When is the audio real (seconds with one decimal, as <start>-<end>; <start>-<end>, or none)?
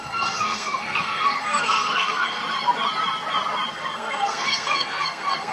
2.4-3.7